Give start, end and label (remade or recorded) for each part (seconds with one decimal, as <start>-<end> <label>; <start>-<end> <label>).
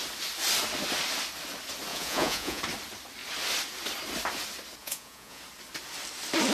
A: 0.0-1.9 recorded; 1.9-2.6 remade; 2.6-4.8 recorded; 4.8-5.4 remade; 5.4-6.5 recorded